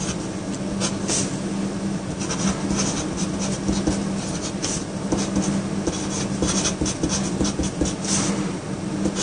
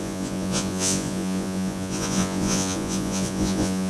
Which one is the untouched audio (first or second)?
first